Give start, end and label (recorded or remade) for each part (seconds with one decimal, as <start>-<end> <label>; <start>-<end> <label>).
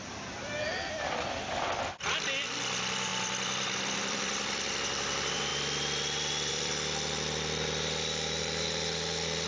0.0-5.5 remade; 5.5-6.5 recorded; 6.5-9.5 remade